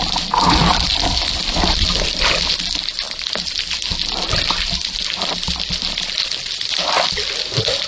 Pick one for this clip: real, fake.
real